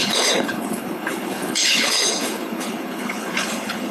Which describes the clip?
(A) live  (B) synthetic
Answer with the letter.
B